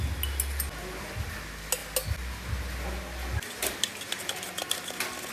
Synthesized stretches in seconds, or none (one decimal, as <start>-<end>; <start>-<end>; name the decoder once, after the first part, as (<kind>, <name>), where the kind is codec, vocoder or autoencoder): none